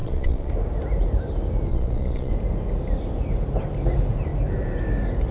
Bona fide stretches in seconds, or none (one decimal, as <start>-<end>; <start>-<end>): 0.5-1.7; 2.3-5.3